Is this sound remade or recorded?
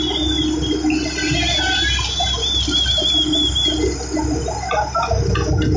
recorded